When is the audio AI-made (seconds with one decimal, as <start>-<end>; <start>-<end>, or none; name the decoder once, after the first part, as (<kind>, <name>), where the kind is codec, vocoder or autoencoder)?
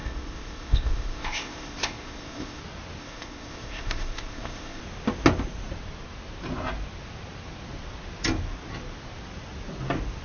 0.0-2.6 (codec, ZipCodec); 3.0-4.8